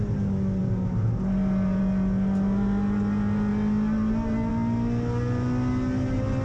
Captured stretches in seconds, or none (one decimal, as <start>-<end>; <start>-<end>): 0.0-6.4